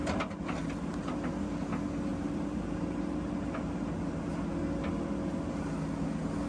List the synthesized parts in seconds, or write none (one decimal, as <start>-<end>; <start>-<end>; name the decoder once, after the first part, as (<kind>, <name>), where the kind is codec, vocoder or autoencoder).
0.6-1.1 (vocoder, BigVGAN v2); 2.1-4.3

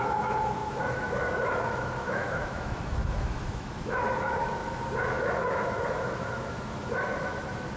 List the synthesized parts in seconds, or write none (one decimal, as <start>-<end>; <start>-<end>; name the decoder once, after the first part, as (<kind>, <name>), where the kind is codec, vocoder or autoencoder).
0.0-4.6 (autoencoder, DAC-VAE); 5.4-7.8

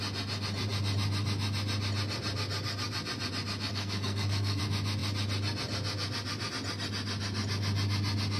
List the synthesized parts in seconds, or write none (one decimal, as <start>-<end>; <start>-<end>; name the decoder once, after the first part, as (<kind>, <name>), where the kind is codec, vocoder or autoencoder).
3.7-4.6 (codec, SNAC)

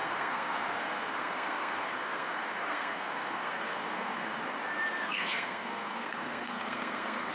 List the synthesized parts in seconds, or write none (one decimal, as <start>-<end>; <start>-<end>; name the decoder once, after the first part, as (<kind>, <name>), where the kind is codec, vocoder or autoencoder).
0.0-4.4 (codec, SNAC); 5.0-7.3

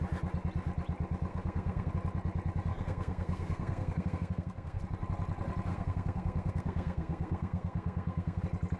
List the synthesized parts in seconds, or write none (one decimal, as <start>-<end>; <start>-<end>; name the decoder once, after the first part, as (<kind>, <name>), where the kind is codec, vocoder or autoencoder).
1.3-1.9 (codec, SNAC); 2.7-4.8; 5.7-8.4

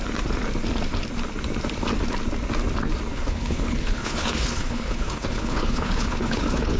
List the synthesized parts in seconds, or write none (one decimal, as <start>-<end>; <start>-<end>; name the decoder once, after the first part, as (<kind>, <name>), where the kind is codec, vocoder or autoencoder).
3.1-6.8 (codec, HILCodec)